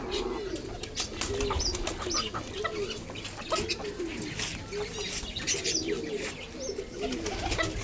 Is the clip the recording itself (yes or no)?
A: yes